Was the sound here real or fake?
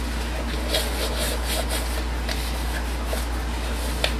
real